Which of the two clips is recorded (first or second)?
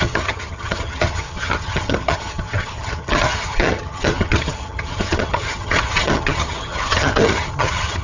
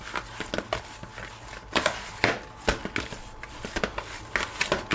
second